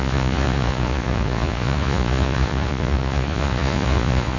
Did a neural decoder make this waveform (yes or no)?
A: yes